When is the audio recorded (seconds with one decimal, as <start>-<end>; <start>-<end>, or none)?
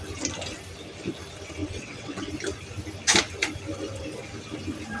0.0-1.6; 2.3-5.0